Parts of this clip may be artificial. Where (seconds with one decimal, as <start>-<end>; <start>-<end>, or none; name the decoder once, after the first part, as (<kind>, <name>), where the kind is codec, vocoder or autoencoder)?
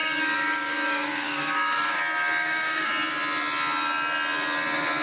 0.0-2.0 (codec, DAC); 2.4-2.9